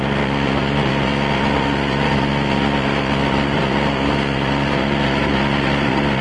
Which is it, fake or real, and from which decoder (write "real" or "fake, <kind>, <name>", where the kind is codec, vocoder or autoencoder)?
fake, vocoder, Vocos